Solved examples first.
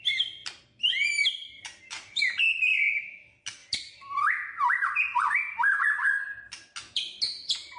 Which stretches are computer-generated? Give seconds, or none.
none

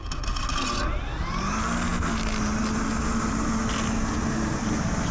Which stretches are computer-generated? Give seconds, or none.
none